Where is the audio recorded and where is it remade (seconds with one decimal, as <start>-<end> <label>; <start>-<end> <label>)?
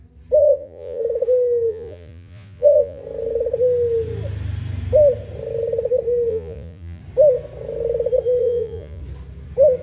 0.0-0.4 recorded; 0.4-1.0 remade; 1.0-1.7 recorded; 1.7-3.0 remade; 3.0-6.3 recorded; 6.3-7.0 remade; 7.0-8.4 recorded; 8.4-9.0 remade; 9.0-9.8 recorded